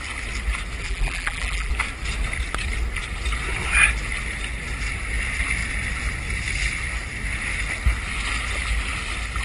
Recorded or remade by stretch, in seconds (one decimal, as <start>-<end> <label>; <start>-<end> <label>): 0.0-0.8 recorded; 0.8-1.7 remade; 1.7-9.4 recorded